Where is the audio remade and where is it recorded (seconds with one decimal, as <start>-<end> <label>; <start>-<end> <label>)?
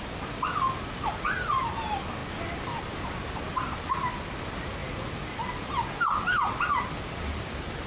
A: 0.0-7.9 recorded